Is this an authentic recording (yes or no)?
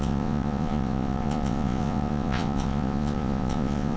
no